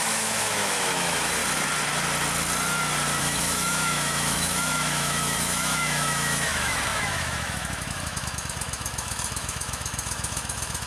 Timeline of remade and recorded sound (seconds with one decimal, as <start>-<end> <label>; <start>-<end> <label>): 0.0-1.4 remade; 1.4-3.2 recorded; 3.2-10.9 remade